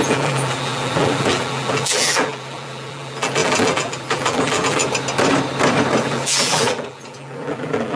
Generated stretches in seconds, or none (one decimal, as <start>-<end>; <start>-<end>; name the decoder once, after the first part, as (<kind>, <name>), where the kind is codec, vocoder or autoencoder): 0.0-4.8 (vocoder, BigVGAN v2); 6.0-8.0